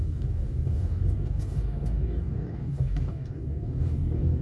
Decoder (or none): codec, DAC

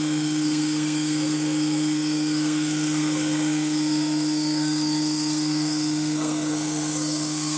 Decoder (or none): codec, SNAC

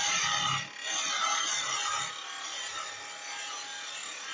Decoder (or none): none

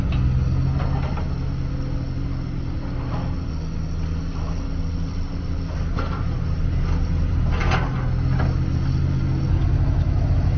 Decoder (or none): none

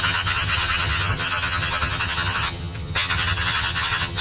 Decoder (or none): vocoder, HiFi-GAN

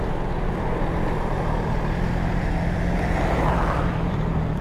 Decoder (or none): none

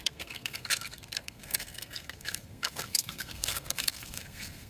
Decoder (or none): codec, SNAC